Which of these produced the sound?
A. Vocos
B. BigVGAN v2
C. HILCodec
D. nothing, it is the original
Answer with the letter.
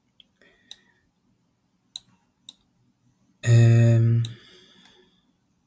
D